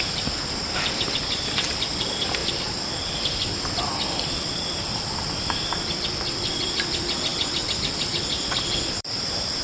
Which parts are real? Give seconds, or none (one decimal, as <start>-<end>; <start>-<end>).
none